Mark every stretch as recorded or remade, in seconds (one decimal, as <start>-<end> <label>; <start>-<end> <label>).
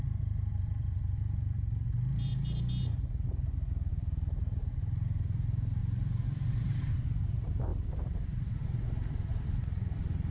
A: 0.0-2.3 remade; 2.3-3.9 recorded; 3.9-10.3 remade